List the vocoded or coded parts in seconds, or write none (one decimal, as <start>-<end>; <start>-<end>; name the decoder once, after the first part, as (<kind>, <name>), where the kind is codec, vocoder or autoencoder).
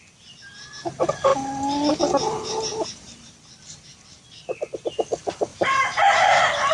2.7-4.2 (vocoder, BigVGAN v2); 5.5-6.7